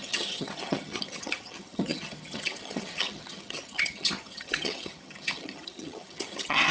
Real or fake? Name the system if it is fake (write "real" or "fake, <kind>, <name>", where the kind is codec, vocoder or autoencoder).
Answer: fake, vocoder, HiFi-GAN